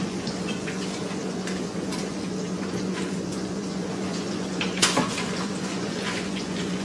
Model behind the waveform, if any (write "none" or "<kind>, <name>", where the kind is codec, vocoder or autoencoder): vocoder, Vocos